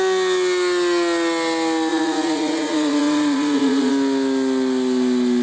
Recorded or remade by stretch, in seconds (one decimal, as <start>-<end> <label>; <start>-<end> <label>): 0.0-1.9 recorded; 1.9-3.9 remade; 3.9-5.4 recorded